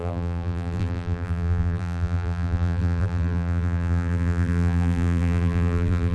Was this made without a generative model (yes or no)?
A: no